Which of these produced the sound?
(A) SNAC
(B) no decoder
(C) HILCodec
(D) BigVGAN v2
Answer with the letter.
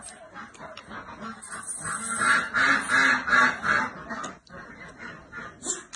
B